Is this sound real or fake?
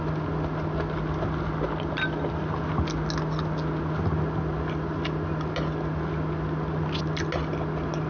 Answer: real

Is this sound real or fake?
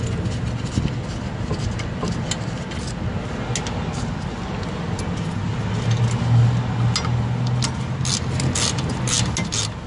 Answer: real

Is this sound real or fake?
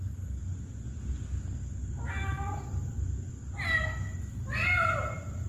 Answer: real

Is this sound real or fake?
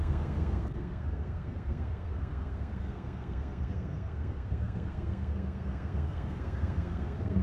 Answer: fake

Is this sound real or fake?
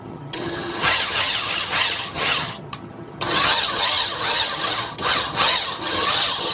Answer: fake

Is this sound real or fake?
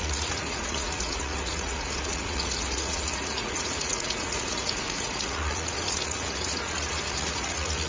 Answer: fake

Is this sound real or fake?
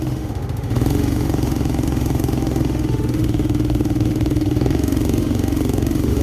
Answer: fake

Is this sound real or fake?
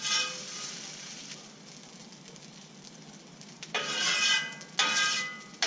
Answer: real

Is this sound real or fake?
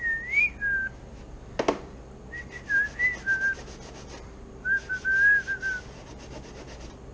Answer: real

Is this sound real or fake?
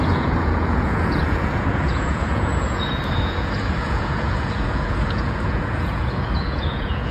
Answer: fake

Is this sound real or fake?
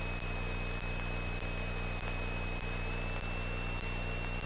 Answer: real